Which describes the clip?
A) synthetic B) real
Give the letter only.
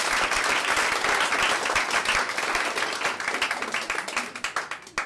B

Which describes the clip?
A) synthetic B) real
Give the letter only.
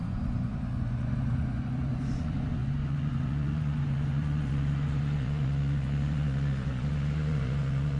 A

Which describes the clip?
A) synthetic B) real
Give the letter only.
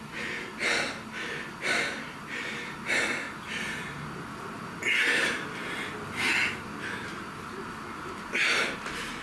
B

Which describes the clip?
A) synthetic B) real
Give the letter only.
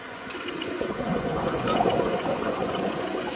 A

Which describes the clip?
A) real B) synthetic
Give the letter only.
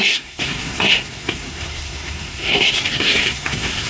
B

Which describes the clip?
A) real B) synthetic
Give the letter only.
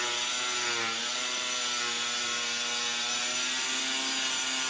A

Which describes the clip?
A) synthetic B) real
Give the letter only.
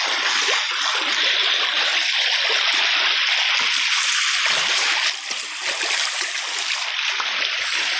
B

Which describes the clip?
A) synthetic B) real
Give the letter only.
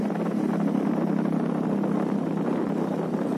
B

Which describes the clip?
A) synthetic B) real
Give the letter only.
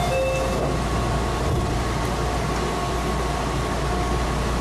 B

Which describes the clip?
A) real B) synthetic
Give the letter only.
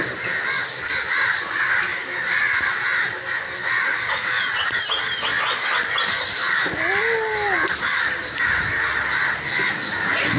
A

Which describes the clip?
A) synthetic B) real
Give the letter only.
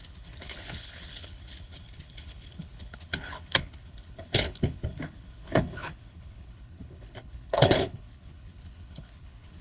A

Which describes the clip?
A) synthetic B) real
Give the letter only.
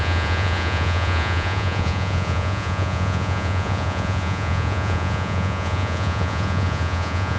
A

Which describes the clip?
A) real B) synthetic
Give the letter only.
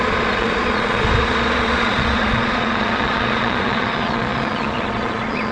B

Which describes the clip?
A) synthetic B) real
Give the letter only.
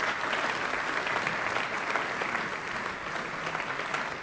B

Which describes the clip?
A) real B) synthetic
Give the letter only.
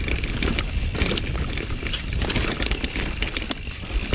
A